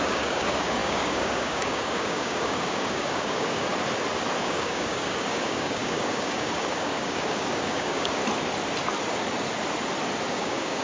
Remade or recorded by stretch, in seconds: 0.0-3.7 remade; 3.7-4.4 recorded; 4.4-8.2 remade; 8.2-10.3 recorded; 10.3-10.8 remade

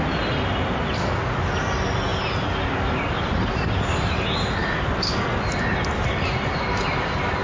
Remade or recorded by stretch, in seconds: 0.0-7.4 recorded

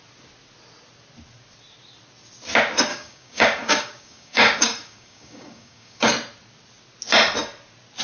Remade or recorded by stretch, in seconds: 0.0-2.9 recorded; 2.9-6.1 remade; 6.1-8.0 recorded

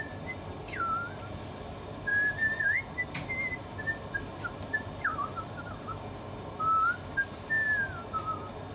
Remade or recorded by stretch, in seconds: 0.0-5.9 recorded; 5.9-6.4 remade; 6.4-8.7 recorded

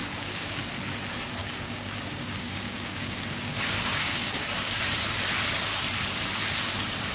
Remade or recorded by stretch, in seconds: 0.0-0.7 remade; 0.7-1.4 recorded; 1.4-4.8 remade; 4.8-7.1 recorded

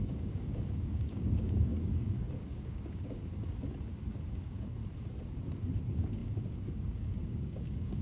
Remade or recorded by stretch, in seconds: 0.0-3.2 remade; 3.2-4.3 recorded; 4.3-4.8 remade; 4.8-5.8 recorded; 5.8-8.0 remade